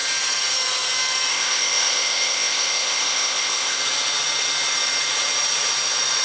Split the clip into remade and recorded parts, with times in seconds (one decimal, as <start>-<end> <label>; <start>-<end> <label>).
0.0-1.3 recorded; 1.3-3.8 remade; 3.8-6.2 recorded